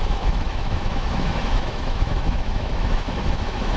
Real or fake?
fake